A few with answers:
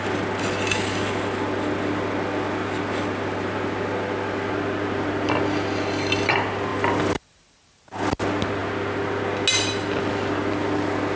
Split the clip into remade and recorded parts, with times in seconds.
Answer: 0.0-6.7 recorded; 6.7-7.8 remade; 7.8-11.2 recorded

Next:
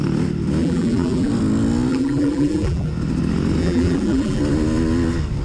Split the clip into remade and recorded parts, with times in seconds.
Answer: 0.0-0.6 recorded; 0.6-1.3 remade; 1.3-1.9 recorded; 1.9-2.9 remade; 2.9-3.6 recorded; 3.6-4.4 remade; 4.4-5.4 recorded

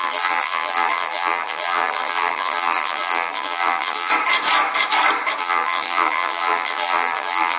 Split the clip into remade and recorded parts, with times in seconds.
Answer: 0.0-4.1 remade; 4.1-5.4 recorded; 5.4-7.6 remade

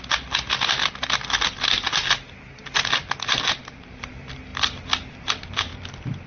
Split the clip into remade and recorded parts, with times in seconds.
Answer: 0.0-2.6 remade; 2.6-3.8 recorded; 3.8-5.7 remade; 5.7-6.3 recorded

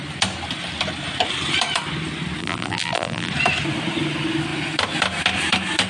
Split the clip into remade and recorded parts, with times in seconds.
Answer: 0.0-2.4 recorded; 2.4-3.3 remade; 3.3-5.9 recorded

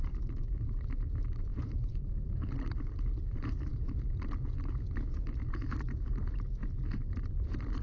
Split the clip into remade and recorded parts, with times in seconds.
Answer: 0.0-7.8 remade

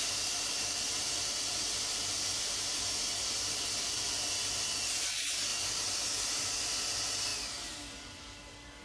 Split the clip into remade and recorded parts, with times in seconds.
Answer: 0.0-5.5 remade; 5.5-6.2 recorded; 6.2-7.3 remade; 7.3-8.4 recorded; 8.4-8.8 remade

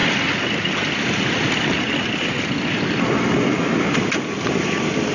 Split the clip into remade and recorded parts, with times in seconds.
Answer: 0.0-3.1 recorded; 3.1-5.1 remade